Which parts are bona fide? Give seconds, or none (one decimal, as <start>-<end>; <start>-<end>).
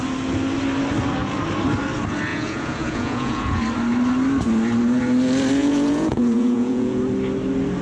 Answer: 0.0-2.3; 3.6-5.6; 7.0-7.8